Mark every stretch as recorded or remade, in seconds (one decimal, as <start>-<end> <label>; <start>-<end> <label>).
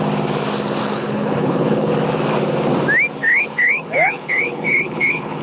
0.0-0.8 recorded; 0.8-1.9 remade; 1.9-3.2 recorded; 3.2-5.4 remade